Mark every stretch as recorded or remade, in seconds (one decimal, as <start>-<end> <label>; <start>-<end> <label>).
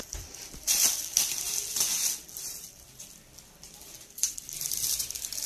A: 0.0-1.6 remade; 1.6-4.1 recorded; 4.1-5.5 remade